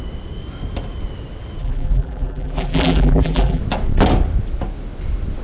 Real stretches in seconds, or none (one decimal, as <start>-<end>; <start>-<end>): 0.0-1.6; 3.6-5.4